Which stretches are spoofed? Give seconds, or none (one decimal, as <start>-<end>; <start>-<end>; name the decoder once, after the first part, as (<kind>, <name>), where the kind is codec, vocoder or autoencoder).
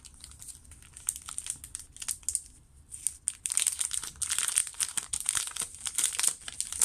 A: 4.6-5.9 (vocoder, BigVGAN v2)